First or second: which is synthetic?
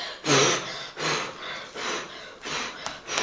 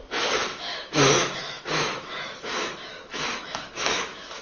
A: second